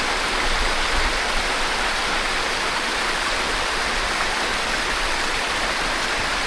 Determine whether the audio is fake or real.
real